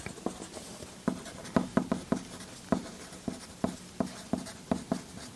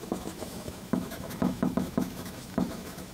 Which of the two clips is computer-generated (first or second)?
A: second